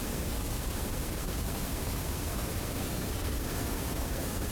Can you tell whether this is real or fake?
fake